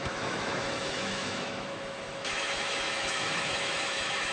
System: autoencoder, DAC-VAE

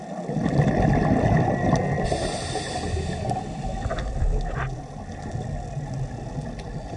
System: none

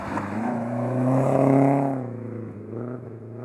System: autoencoder, DAC-VAE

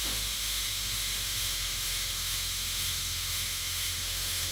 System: autoencoder, DAC-VAE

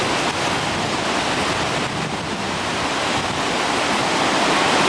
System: none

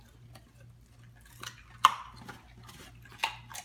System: none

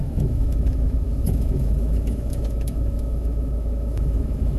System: autoencoder, DAC-VAE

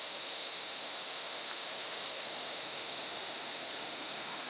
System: autoencoder, DAC-VAE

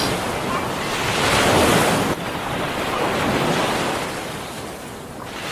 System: none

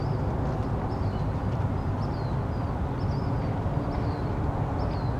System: none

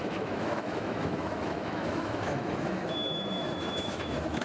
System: autoencoder, DAC-VAE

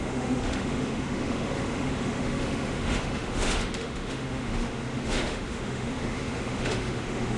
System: autoencoder, DAC-VAE